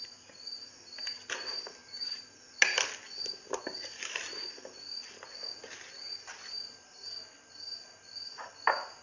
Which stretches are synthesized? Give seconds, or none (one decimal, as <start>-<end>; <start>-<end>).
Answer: none